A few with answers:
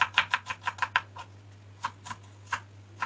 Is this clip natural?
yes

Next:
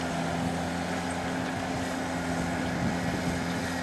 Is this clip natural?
yes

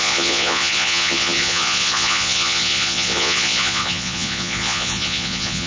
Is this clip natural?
no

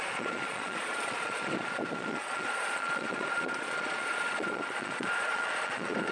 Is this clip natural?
no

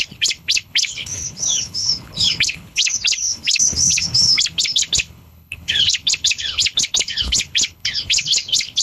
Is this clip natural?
no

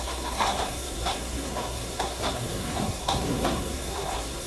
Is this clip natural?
no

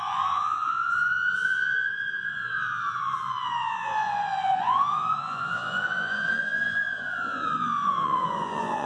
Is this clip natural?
no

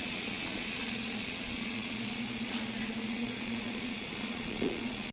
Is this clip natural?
no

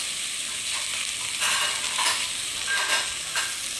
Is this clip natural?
no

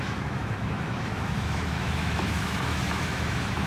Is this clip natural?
no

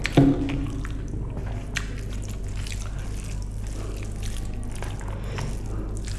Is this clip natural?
yes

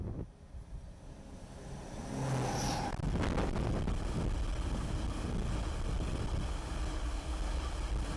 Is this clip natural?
yes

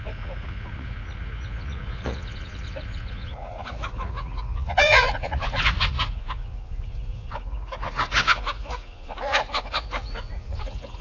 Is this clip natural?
no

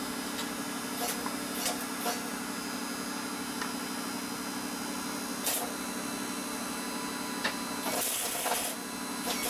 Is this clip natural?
yes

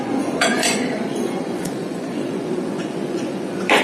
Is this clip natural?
no